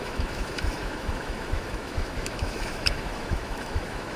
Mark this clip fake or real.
fake